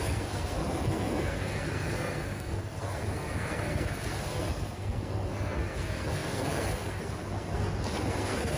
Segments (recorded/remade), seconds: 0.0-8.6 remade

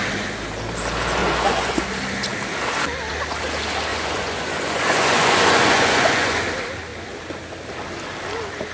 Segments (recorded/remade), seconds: 0.0-1.2 recorded; 1.2-1.8 remade; 1.8-3.9 recorded; 3.9-6.4 remade; 6.4-8.7 recorded

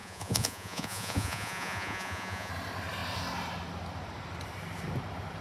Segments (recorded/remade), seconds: 0.0-2.5 remade; 2.5-5.4 recorded

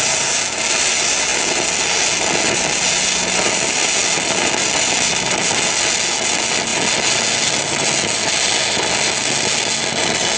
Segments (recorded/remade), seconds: 0.0-10.4 recorded

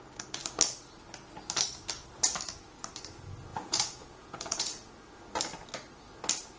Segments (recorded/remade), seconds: 0.0-3.5 recorded; 3.5-4.9 remade; 4.9-6.6 recorded